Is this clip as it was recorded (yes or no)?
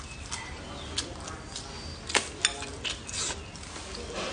yes